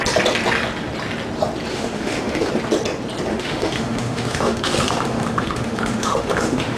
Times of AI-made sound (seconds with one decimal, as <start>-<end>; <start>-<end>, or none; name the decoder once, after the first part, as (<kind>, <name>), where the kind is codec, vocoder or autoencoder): 1.7-2.5 (autoencoder, DAC-VAE); 3.3-6.8

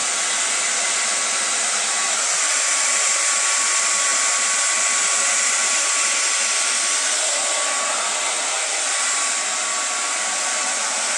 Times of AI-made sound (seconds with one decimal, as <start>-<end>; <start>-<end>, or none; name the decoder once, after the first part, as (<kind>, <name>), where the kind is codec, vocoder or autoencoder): none

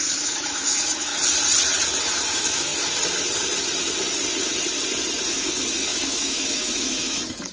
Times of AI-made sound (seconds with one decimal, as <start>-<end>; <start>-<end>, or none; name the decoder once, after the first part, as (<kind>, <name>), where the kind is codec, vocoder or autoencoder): 0.0-1.1 (autoencoder, DAC-VAE); 2.0-2.7; 5.3-7.5